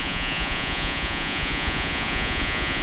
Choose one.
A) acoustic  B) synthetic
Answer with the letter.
B